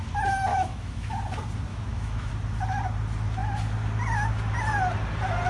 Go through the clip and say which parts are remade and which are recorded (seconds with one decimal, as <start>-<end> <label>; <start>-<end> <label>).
0.0-0.5 recorded; 0.5-1.1 remade; 1.1-1.7 recorded; 1.7-2.3 remade; 2.3-5.5 recorded